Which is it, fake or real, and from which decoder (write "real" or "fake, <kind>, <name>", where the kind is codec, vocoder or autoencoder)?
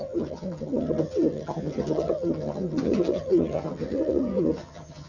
fake, vocoder, HiFi-GAN